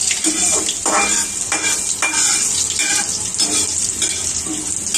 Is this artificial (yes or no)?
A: no